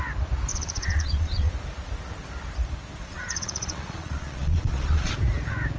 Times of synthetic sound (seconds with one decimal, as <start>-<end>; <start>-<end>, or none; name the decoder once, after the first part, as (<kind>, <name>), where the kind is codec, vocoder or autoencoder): 0.5-1.5 (vocoder, Vocos); 3.0-5.1